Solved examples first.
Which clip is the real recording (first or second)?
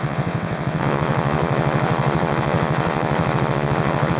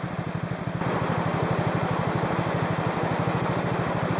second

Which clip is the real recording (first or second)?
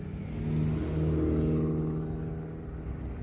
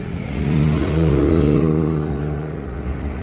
first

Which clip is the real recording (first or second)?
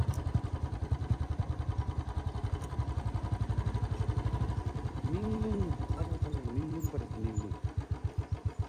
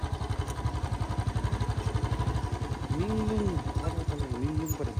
second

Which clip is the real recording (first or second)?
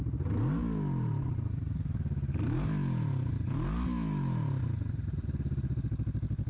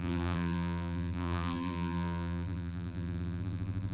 first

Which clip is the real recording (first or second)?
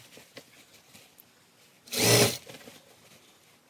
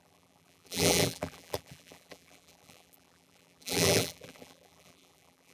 first